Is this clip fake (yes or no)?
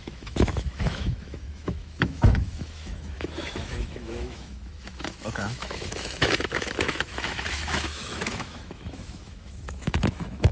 yes